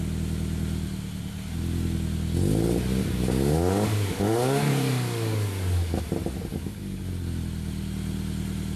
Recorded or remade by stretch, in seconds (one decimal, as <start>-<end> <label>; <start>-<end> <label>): 0.0-3.0 recorded; 3.0-6.0 remade; 6.0-6.5 recorded; 6.5-7.0 remade; 7.0-8.8 recorded